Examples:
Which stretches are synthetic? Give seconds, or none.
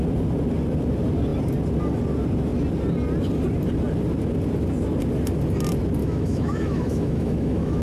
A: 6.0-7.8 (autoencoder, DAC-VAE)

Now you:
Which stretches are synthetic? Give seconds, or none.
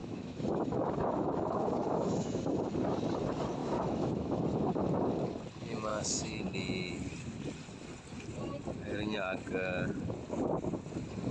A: 0.0-2.4 (autoencoder, DAC-VAE); 3.6-4.4; 5.9-6.6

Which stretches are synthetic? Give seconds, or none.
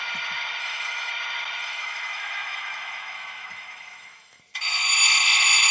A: 0.6-1.1 (autoencoder, DAC-VAE); 1.6-4.4